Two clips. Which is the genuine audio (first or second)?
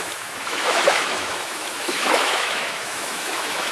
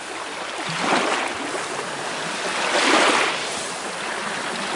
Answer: second